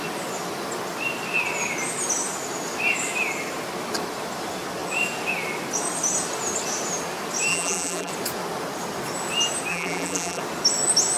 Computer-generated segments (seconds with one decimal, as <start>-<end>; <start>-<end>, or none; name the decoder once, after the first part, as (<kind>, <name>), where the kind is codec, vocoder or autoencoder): 7.5-8.1 (vocoder, BigVGAN v2); 9.7-10.4